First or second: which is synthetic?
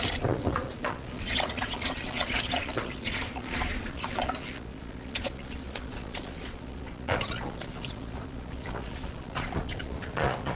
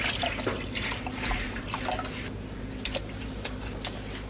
first